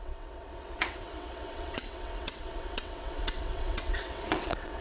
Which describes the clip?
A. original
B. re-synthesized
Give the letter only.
B